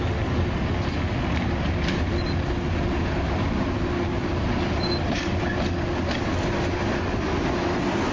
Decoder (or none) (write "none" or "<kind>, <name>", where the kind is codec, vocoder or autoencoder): none